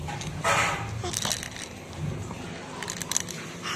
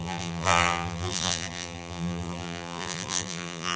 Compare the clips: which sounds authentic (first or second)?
first